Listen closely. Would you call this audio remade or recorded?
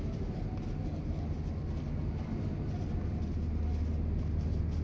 recorded